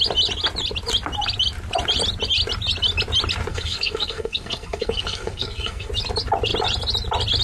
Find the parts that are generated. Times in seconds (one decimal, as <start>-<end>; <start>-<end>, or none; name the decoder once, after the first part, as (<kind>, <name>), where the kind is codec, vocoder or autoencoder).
3.5-5.9 (codec, SNAC)